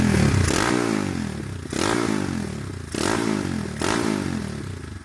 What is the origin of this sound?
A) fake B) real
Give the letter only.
B